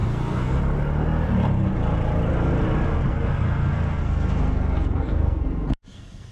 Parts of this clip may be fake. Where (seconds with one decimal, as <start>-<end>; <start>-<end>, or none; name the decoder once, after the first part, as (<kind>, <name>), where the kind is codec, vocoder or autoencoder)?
0.0-0.6 (codec, SNAC); 2.9-6.3